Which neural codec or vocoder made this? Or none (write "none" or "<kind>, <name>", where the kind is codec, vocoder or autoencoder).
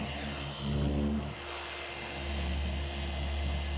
none